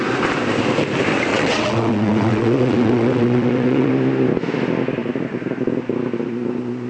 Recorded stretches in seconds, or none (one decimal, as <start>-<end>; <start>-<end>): 0.0-1.3; 3.9-6.9